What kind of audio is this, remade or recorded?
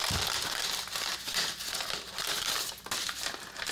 recorded